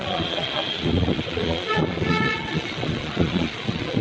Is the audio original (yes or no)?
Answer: no